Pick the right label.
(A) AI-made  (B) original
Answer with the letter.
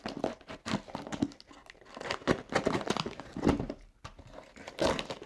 B